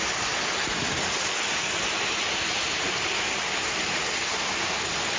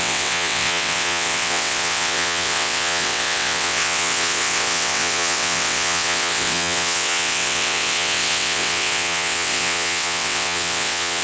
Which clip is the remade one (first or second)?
second